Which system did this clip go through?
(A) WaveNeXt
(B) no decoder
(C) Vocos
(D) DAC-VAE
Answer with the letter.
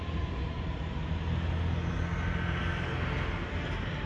B